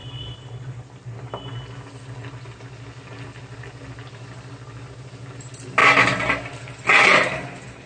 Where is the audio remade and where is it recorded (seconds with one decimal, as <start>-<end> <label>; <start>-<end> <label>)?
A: 0.0-7.9 recorded